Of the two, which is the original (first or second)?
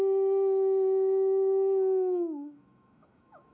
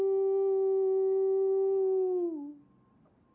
second